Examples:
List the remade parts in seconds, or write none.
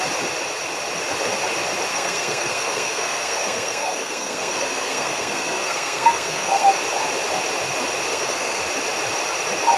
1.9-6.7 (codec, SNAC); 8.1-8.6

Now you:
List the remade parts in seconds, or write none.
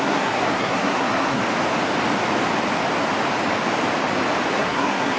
0.0-1.4 (codec, SNAC); 4.5-5.2